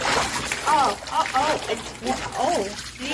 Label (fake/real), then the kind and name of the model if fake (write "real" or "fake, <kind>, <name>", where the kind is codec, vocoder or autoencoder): real